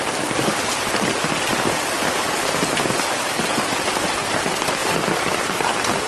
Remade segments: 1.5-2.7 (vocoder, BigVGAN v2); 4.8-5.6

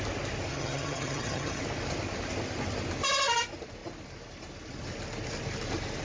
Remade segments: 0.5-1.6 (vocoder, HiFi-GAN)

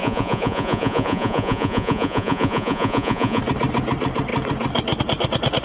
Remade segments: 0.0-3.4 (vocoder, Vocos)

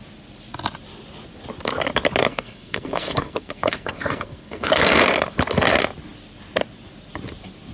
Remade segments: 2.2-5.0 (codec, SNAC)